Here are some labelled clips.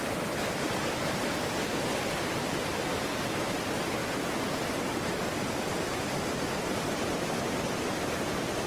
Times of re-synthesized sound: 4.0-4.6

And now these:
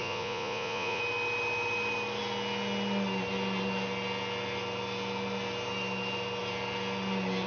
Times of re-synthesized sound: 0.0-1.0

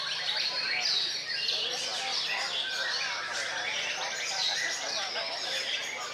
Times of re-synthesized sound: none

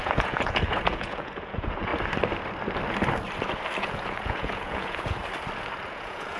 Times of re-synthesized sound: 0.0-1.9; 3.8-5.2; 5.9-6.4

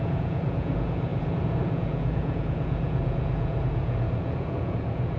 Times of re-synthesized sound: 0.0-5.2

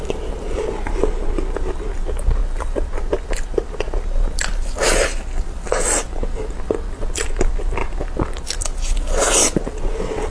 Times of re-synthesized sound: none